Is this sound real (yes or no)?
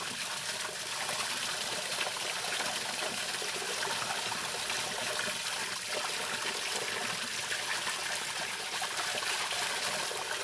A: yes